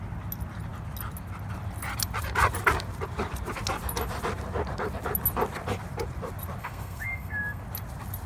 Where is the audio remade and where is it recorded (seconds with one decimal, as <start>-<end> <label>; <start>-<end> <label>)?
0.0-6.6 recorded; 6.6-7.6 remade; 7.6-8.3 recorded